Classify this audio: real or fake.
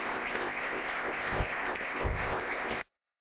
fake